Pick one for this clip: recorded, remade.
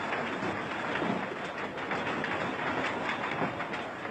recorded